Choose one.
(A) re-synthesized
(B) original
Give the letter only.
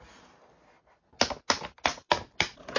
B